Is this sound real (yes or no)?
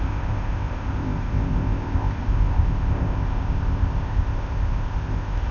no